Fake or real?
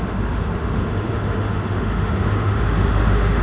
fake